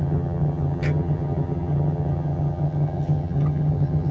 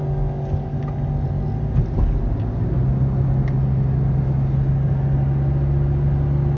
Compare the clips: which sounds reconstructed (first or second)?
first